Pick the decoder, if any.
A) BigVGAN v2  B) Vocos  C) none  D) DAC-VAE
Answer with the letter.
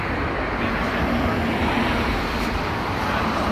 A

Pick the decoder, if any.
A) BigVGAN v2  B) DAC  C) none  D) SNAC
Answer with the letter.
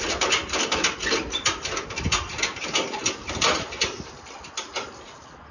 C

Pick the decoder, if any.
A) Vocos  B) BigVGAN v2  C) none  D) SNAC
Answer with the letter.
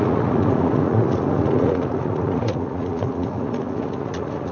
A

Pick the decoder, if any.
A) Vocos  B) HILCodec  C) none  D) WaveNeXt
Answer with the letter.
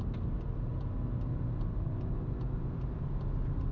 C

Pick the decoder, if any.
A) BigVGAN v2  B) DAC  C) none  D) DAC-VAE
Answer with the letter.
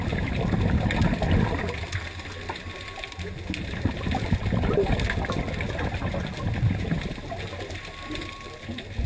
C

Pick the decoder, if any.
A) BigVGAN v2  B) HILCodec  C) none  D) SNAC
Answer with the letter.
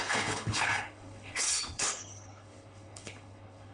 B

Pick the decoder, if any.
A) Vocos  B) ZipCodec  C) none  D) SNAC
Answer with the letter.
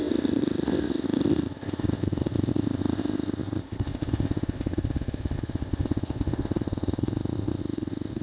B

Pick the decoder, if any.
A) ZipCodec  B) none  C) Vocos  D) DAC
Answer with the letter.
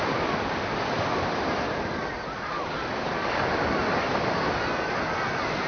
B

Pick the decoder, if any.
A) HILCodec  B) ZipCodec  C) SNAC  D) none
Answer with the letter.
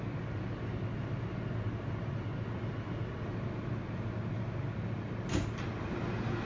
D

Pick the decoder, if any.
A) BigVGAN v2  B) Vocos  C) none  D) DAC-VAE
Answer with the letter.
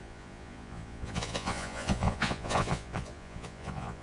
B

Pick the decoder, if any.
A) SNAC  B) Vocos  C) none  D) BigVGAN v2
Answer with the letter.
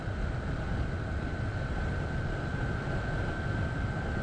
C